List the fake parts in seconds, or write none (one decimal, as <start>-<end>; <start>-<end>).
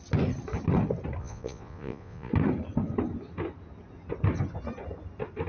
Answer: 1.2-2.3